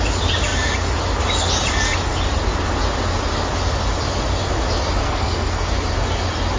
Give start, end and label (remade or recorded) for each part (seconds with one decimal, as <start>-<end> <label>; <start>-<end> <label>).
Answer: 0.0-5.0 recorded; 5.0-5.6 remade; 5.6-6.6 recorded